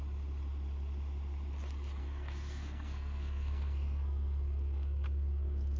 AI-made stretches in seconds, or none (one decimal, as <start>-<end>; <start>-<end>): 2.0-5.8

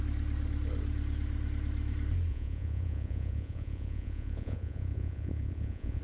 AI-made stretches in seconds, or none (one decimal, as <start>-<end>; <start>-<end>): 2.3-6.0

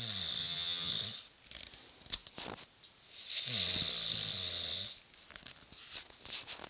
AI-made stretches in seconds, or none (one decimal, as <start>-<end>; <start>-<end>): 0.4-0.9

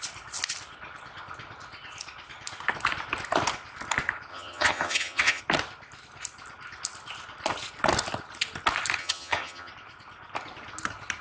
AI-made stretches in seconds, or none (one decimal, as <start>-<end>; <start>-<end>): 4.3-5.4; 9.0-9.7

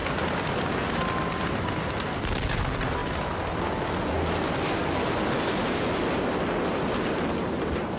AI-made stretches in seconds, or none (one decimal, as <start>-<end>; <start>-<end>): none